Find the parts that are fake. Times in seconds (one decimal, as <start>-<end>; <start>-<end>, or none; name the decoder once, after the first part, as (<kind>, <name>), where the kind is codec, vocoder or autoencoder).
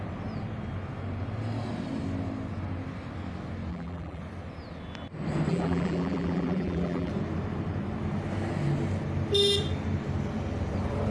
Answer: 3.7-4.2 (vocoder, BigVGAN v2); 5.5-7.1